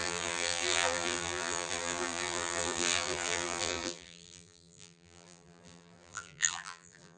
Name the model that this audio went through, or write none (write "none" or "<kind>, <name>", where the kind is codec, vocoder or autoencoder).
vocoder, BigVGAN v2